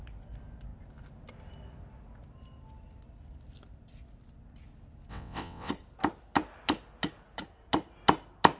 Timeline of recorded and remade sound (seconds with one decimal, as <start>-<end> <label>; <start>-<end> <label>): 0.0-5.1 recorded; 5.1-5.7 remade; 5.7-8.6 recorded

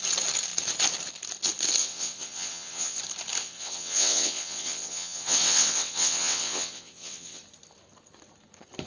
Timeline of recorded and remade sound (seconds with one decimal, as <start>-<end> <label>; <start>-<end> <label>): 0.0-1.8 recorded; 1.8-3.0 remade; 3.0-3.4 recorded; 3.4-7.4 remade; 7.4-8.9 recorded

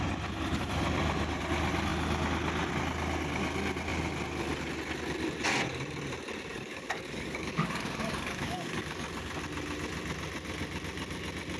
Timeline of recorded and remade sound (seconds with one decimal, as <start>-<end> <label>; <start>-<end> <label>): 0.0-6.5 recorded; 6.5-9.3 remade; 9.3-11.6 recorded

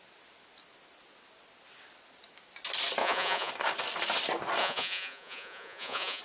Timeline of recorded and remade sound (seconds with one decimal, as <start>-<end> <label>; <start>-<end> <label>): 0.0-3.0 recorded; 3.0-3.5 remade; 3.5-4.6 recorded; 4.6-6.2 remade